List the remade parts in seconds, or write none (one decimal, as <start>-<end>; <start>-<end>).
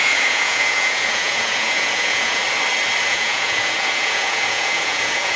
0.0-2.4; 3.0-5.4